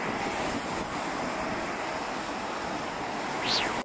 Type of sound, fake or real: real